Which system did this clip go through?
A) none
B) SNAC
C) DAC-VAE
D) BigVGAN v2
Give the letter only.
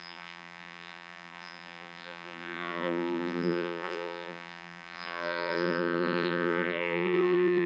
D